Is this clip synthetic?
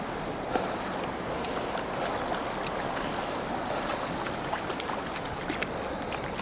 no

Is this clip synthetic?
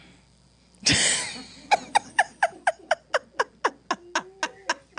no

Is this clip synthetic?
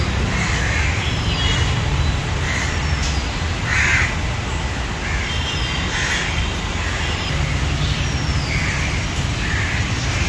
no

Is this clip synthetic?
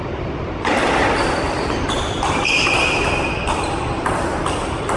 yes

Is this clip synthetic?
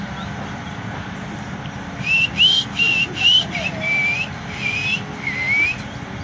no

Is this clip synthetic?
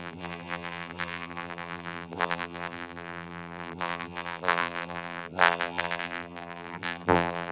yes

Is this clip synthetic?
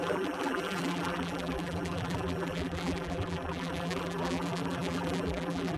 yes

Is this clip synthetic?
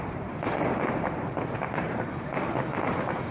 yes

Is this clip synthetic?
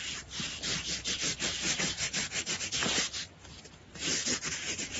yes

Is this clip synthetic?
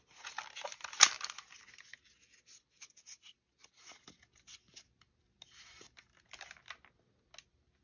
no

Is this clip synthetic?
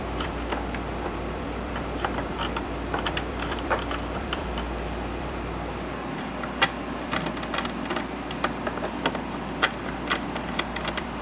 yes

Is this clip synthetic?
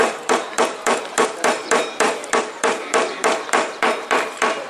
yes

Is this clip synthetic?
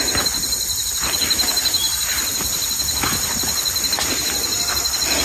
yes